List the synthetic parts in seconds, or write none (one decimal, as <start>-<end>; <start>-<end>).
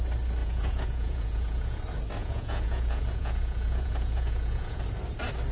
0.4-1.8; 2.2-4.8